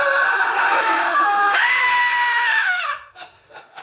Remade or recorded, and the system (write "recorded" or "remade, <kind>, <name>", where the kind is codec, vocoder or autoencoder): remade, autoencoder, DAC-VAE